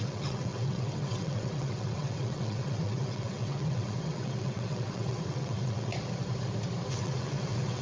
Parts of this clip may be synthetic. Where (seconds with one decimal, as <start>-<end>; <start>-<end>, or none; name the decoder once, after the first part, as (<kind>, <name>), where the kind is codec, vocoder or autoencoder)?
0.0-5.9 (vocoder, WaveNeXt); 6.9-7.8